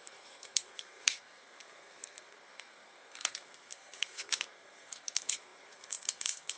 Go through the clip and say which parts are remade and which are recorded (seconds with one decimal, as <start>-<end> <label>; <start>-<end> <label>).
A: 0.0-6.6 remade